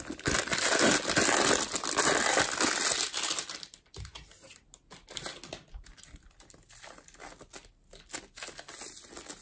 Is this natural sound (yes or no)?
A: yes